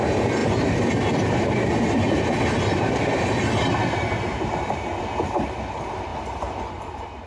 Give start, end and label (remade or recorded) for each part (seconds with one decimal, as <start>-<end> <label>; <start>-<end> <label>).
0.0-0.4 recorded; 0.4-0.9 remade; 0.9-4.3 recorded; 4.3-5.0 remade; 5.0-6.1 recorded; 6.1-6.6 remade; 6.6-7.3 recorded

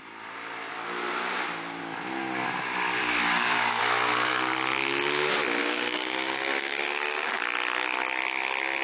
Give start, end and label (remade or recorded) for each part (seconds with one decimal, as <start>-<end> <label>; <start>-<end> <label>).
0.0-3.0 recorded; 3.0-3.8 remade; 3.8-5.6 recorded; 5.6-7.4 remade; 7.4-8.8 recorded

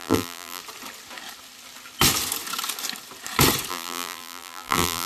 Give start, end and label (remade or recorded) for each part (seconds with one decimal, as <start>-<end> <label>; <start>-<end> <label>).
0.0-0.6 remade; 0.6-3.7 recorded; 3.7-5.1 remade

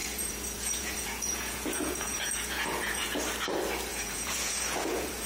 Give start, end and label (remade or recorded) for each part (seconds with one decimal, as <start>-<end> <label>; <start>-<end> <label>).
0.0-3.2 remade; 3.2-3.9 recorded; 3.9-5.3 remade

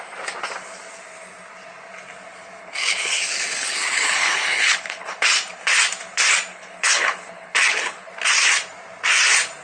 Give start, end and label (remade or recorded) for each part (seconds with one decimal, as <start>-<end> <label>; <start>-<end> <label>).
0.0-2.6 recorded; 2.6-5.1 remade; 5.1-6.5 recorded; 6.5-8.1 remade; 8.1-9.6 recorded

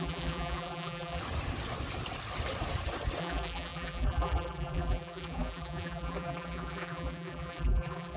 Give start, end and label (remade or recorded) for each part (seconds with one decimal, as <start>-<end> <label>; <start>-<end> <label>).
0.0-1.2 remade; 1.2-3.2 recorded; 3.2-8.2 remade

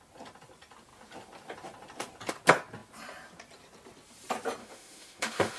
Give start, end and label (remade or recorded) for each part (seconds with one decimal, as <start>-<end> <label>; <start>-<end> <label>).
0.0-4.6 recorded; 4.6-5.6 remade